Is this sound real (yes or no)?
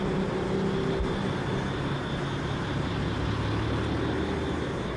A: yes